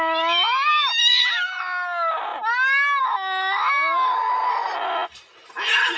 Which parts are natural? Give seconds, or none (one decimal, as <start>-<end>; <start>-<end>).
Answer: 0.0-6.0